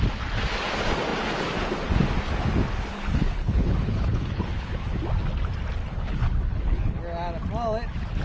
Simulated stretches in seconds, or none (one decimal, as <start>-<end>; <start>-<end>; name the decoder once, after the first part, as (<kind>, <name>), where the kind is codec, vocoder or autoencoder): 2.9-5.0 (codec, HILCodec); 5.8-7.0